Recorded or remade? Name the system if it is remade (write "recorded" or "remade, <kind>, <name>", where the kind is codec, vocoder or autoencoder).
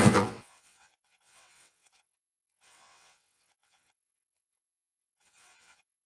remade, vocoder, WaveNeXt